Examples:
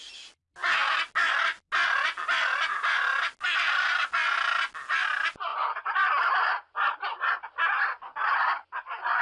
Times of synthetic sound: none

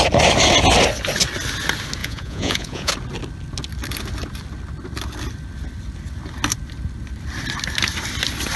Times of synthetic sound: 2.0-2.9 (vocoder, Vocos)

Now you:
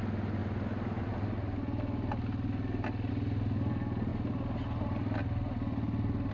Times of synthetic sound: none

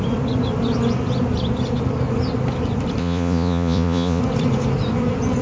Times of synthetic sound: 3.0-4.2 (vocoder, Vocos)

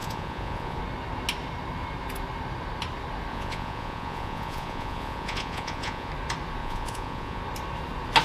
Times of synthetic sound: 0.0-0.8 (vocoder, Vocos); 3.3-6.1; 6.6-7.4